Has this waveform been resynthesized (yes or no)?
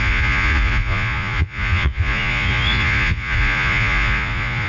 yes